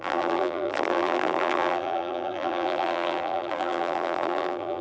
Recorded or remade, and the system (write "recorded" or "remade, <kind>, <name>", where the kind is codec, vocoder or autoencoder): remade, vocoder, BigVGAN v2